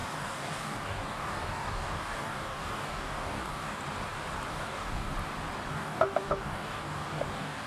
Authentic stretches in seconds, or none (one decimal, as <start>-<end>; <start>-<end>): 3.8-4.5; 5.1-5.7